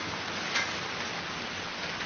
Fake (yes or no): no